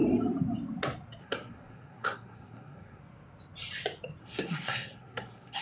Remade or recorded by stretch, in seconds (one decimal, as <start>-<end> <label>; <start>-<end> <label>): 0.0-1.2 recorded; 1.2-3.0 remade; 3.0-4.2 recorded; 4.2-5.6 remade